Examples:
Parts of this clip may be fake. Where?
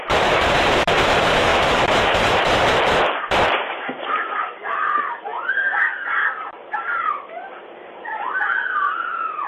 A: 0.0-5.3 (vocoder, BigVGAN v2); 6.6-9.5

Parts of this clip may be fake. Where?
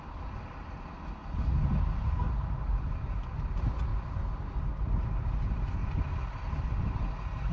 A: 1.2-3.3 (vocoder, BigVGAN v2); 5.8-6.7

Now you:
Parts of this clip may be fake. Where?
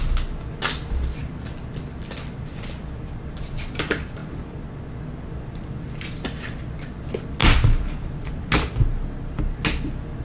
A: 1.2-3.4 (vocoder, BigVGAN v2); 4.2-6.2; 7.4-8.5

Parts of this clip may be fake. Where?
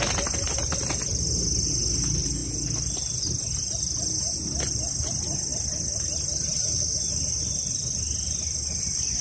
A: none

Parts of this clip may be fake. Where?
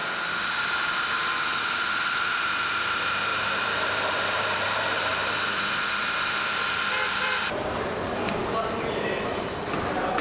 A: 3.3-4.6 (vocoder, BigVGAN v2); 5.1-9.6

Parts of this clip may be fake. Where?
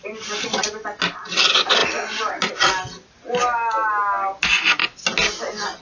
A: none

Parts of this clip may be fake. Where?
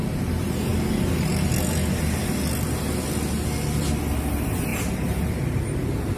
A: 0.0-0.7 (vocoder, BigVGAN v2); 4.3-6.2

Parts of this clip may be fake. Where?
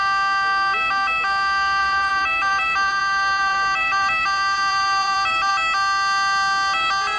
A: 1.8-5.5 (vocoder, BigVGAN v2)